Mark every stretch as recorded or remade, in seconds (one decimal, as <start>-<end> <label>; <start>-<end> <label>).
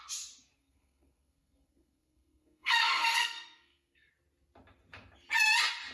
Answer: 0.0-0.6 recorded; 0.6-4.1 remade; 4.1-5.9 recorded